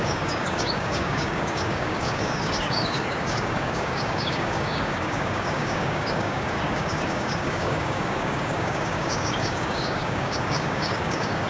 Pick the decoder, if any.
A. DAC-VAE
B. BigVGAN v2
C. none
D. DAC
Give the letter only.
D